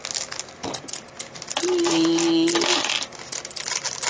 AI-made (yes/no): no